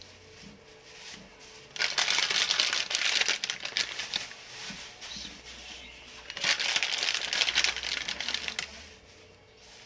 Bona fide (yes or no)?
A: yes